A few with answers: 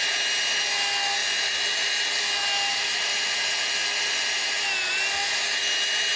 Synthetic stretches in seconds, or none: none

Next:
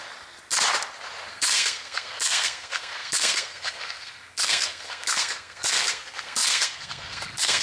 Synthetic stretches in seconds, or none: 1.3-7.6 (codec, SNAC)

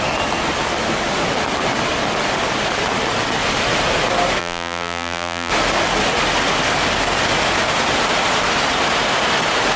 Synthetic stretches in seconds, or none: 4.4-5.5 (vocoder, BigVGAN v2)

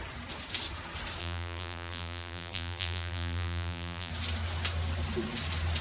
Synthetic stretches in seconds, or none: 1.2-4.1 (vocoder, BigVGAN v2)

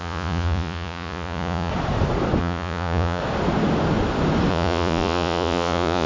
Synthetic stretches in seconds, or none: 0.0-1.7 (vocoder, Vocos); 2.4-3.2; 4.5-6.1

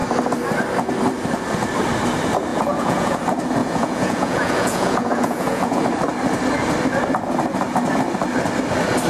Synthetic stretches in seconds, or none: 2.5-3.2 (vocoder, Vocos); 3.6-5.8

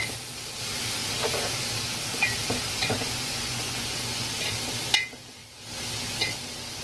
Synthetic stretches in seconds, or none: 2.8-4.3 (vocoder, Vocos)

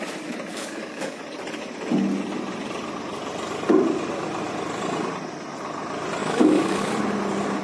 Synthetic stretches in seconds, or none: 0.5-1.2 (codec, DAC); 6.2-6.9